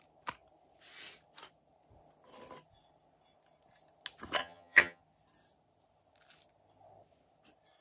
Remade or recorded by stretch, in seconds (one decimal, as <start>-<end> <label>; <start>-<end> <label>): 0.0-4.4 recorded; 4.4-5.0 remade; 5.0-7.8 recorded